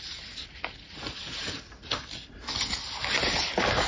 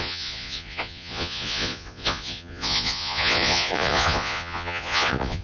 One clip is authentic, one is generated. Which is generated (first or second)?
second